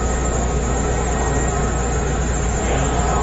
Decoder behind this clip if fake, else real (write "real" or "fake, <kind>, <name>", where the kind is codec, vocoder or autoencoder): real